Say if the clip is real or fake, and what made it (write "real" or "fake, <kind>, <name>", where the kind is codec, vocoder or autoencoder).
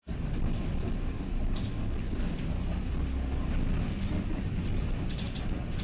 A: real